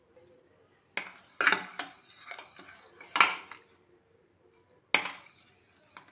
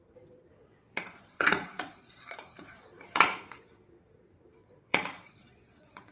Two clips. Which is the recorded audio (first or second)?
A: first